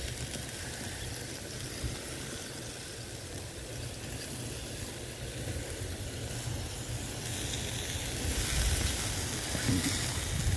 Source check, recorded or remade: recorded